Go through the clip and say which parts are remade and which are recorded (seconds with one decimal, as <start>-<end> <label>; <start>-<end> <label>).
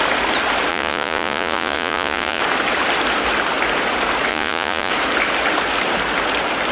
0.0-0.7 recorded; 0.7-2.4 remade; 2.4-4.3 recorded; 4.3-4.9 remade; 4.9-6.7 recorded